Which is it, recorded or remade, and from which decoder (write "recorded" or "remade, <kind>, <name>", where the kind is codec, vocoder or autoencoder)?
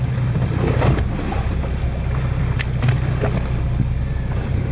recorded